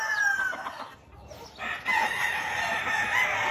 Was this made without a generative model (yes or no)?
yes